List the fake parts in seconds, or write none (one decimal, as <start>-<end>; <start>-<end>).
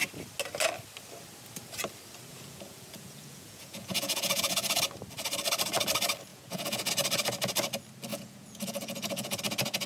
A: 2.3-4.8; 6.3-6.9; 8.1-9.4